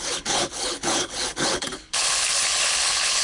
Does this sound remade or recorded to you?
remade